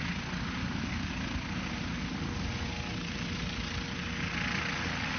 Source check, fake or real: real